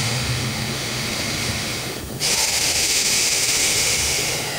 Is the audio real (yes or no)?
no